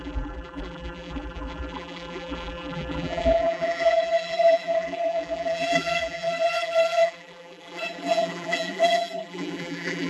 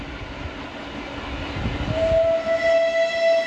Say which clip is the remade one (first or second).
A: first